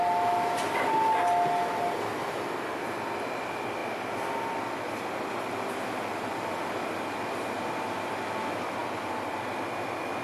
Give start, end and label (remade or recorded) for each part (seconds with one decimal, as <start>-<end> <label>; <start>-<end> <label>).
0.0-2.2 recorded; 2.2-3.0 remade; 3.0-10.2 recorded